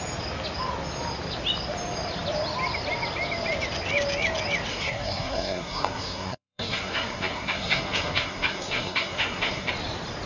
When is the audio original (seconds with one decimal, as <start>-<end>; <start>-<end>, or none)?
0.0-4.7; 9.7-10.3

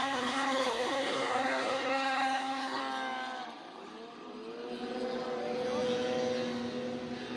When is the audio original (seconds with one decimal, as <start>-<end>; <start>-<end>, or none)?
2.8-7.4

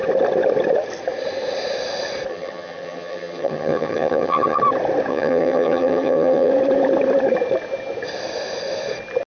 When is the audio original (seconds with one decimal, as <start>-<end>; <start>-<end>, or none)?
0.0-2.3; 4.6-5.1; 6.5-9.4

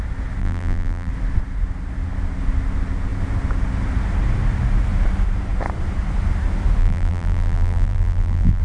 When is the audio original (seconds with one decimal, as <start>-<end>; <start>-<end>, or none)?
0.0-0.4; 1.1-6.8

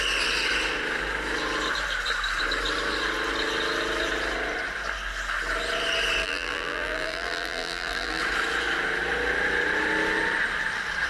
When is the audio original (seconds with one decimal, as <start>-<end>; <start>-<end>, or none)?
0.0-6.2; 8.2-11.1

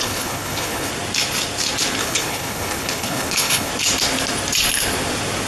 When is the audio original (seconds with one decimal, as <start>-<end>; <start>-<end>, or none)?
0.9-2.0; 3.7-5.5

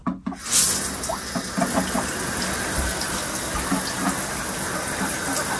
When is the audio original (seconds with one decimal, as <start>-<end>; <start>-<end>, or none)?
0.0-5.6